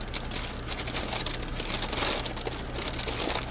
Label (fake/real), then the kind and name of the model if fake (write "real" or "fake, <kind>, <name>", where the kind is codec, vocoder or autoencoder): real